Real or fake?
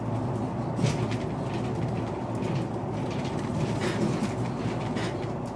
real